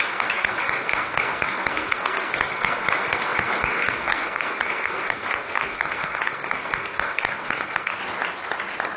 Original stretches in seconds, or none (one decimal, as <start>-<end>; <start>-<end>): 8.0-9.0